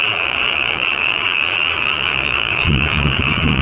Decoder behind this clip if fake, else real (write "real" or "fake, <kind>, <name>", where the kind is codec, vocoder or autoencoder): fake, vocoder, Vocos